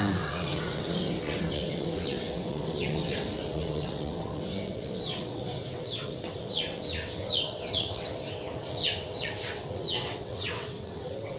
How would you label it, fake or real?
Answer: fake